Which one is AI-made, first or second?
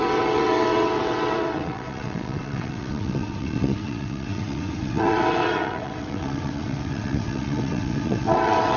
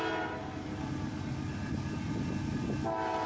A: first